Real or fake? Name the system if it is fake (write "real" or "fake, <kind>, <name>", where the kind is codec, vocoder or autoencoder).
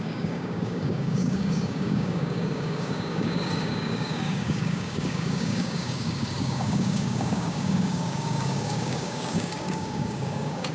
fake, codec, DAC